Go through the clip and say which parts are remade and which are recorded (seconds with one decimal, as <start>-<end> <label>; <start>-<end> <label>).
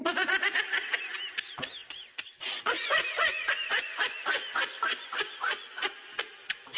0.0-1.8 recorded; 1.8-5.9 remade; 5.9-6.8 recorded